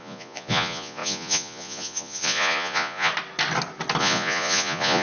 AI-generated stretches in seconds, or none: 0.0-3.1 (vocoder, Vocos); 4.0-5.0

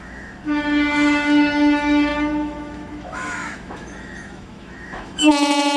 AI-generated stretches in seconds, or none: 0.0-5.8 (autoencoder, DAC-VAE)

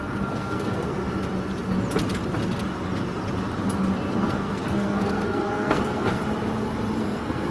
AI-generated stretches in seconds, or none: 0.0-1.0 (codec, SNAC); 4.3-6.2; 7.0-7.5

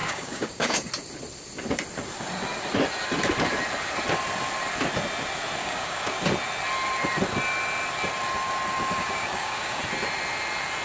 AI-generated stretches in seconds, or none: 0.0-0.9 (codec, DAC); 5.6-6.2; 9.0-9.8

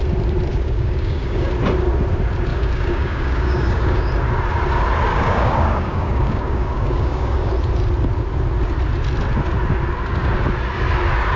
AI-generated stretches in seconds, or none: 0.5-1.5 (codec, DAC); 2.5-4.1; 5.1-7.5

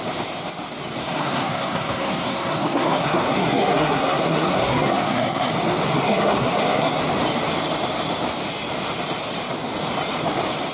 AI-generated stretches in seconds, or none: 1.0-5.5 (codec, SNAC); 5.9-7.0

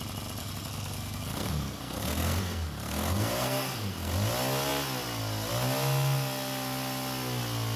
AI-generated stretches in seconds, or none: 0.4-4.1 (codec, SNAC)

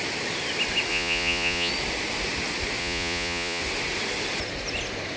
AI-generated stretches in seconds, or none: 0.9-1.7 (vocoder, Vocos); 2.8-3.6